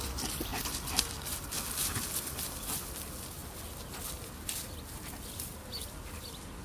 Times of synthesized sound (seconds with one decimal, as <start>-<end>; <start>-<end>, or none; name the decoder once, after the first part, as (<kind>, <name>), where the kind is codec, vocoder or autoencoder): 0.5-1.5 (vocoder, BigVGAN v2)